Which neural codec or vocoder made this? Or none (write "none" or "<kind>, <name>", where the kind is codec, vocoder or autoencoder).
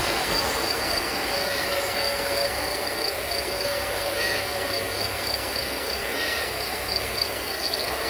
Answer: codec, SNAC